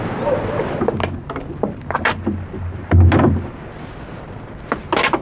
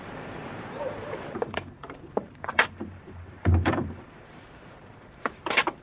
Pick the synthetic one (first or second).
second